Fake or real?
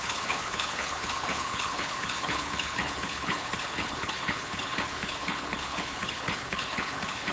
fake